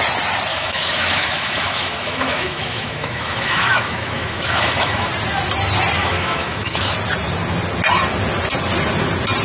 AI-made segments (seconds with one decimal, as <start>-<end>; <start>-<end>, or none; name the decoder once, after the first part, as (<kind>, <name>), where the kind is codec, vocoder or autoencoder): 0.5-5.1 (autoencoder, DAC-VAE); 6.0-6.9